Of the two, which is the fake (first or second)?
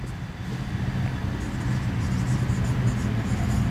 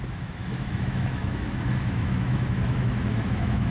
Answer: second